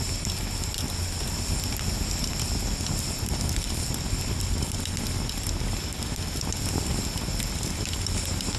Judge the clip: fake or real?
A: real